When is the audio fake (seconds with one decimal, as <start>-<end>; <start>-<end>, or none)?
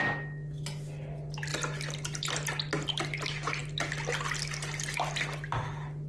none